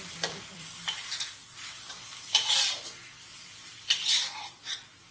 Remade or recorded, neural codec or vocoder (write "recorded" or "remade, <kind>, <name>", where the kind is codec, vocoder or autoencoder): remade, vocoder, BigVGAN v2